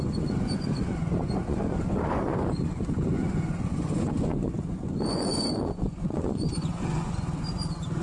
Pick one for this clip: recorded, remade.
remade